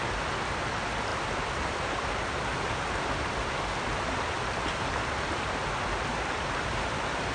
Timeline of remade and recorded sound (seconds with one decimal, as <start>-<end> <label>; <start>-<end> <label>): 0.0-1.1 recorded; 1.1-5.5 remade; 5.5-7.3 recorded